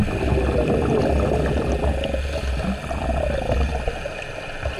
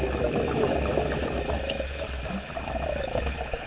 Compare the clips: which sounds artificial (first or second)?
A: second